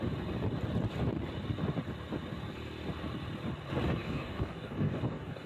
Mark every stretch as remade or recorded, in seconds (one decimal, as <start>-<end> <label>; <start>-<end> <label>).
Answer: 0.0-4.0 recorded; 4.0-5.5 remade